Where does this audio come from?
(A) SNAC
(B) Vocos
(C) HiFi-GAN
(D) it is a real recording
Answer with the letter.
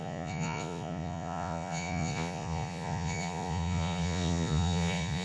B